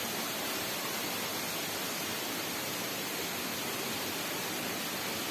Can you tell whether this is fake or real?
real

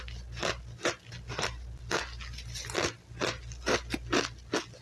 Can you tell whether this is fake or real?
real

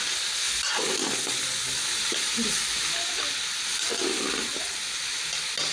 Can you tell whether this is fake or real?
real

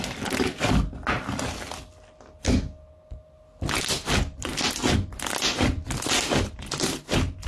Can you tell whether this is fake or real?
real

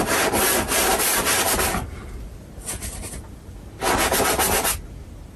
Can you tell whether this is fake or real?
real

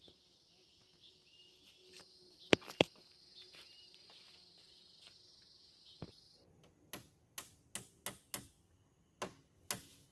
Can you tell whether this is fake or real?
real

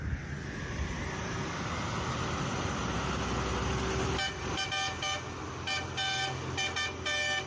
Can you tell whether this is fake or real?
real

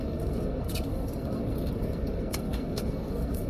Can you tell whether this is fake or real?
fake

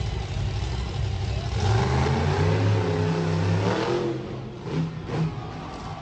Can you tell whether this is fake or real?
real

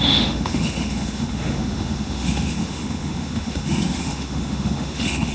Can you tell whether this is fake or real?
fake